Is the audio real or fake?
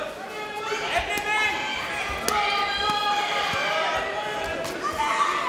real